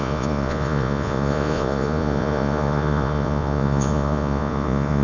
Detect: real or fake fake